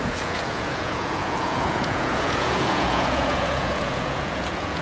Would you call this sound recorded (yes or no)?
no